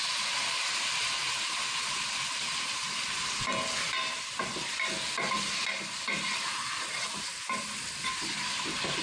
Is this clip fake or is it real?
real